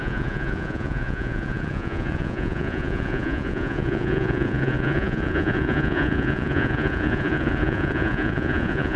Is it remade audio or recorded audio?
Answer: remade